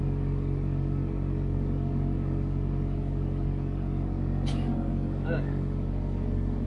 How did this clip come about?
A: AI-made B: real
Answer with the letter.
A